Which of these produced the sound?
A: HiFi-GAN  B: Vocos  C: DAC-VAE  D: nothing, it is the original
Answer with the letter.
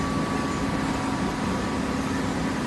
D